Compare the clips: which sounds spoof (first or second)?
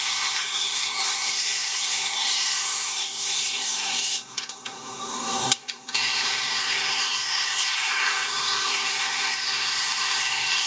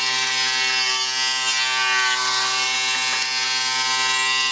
first